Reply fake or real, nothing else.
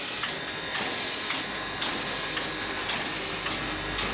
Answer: real